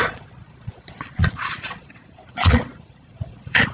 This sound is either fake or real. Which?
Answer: fake